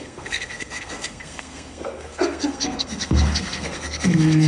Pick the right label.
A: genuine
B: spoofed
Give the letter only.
B